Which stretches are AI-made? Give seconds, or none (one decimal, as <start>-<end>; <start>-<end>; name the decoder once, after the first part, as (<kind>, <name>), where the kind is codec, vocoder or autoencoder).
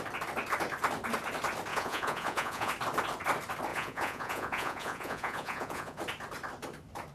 1.7-2.7 (vocoder, Vocos); 3.7-6.0